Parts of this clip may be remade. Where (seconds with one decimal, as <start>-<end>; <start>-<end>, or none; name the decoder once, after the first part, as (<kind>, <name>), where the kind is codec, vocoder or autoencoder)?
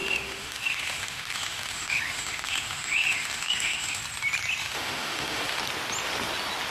0.0-4.0 (autoencoder, DAC-VAE); 4.6-5.6